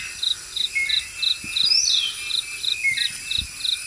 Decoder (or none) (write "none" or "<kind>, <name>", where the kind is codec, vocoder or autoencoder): none